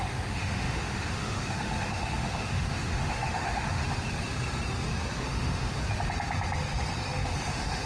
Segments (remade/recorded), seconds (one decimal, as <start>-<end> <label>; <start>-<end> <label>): 0.0-3.8 remade; 3.8-5.2 recorded; 5.2-5.8 remade; 5.8-7.5 recorded; 7.5-7.9 remade